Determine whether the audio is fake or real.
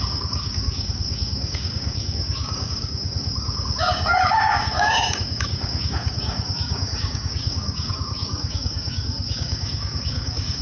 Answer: fake